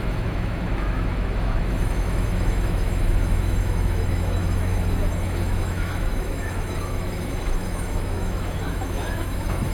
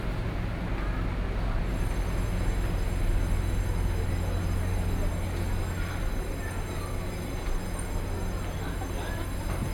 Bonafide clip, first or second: second